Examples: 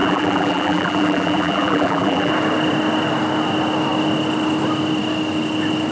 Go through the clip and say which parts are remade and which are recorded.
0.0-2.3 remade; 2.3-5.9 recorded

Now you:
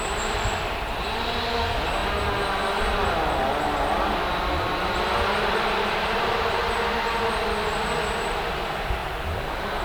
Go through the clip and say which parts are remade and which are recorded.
0.0-2.0 remade; 2.0-5.7 recorded; 5.7-6.6 remade; 6.6-8.2 recorded; 8.2-9.8 remade

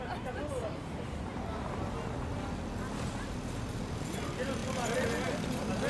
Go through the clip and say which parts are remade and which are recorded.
0.0-4.6 recorded; 4.6-5.4 remade; 5.4-5.9 recorded

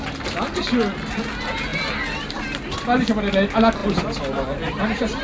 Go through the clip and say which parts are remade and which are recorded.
0.0-5.2 recorded

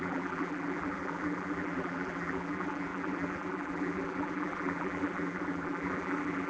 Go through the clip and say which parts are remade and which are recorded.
0.0-6.5 remade

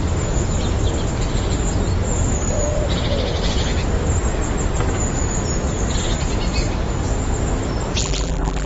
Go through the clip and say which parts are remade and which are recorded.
0.0-8.0 recorded; 8.0-8.7 remade

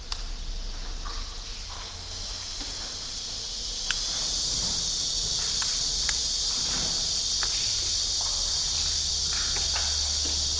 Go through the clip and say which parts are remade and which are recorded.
0.0-10.6 recorded

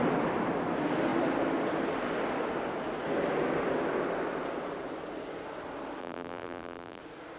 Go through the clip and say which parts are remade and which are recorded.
0.0-6.0 recorded; 6.0-7.0 remade; 7.0-7.4 recorded